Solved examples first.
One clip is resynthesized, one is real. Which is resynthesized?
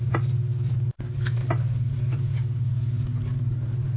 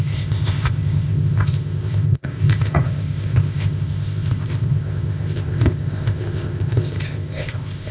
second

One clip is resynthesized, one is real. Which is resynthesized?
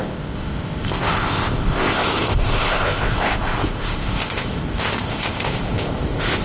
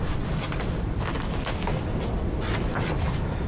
first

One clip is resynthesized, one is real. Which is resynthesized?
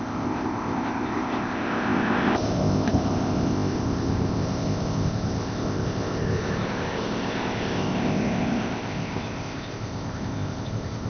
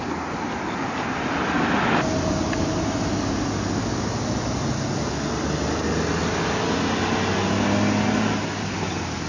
first